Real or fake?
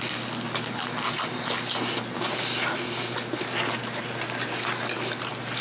real